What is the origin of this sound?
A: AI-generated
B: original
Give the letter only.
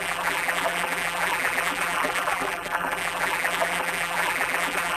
A